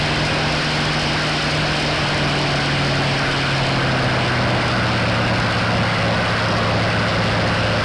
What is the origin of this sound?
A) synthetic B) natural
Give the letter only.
B